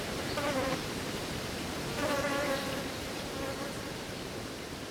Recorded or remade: remade